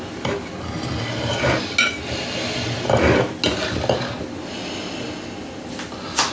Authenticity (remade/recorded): recorded